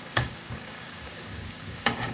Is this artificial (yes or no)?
yes